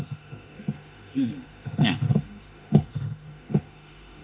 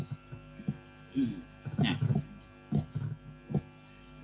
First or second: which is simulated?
first